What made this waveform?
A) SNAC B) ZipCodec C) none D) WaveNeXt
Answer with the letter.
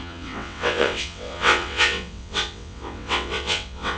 D